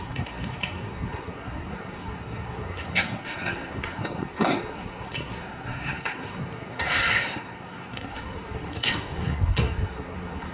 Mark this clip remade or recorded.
remade